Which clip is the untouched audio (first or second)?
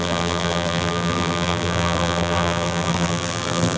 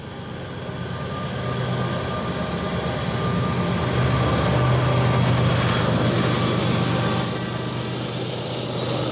second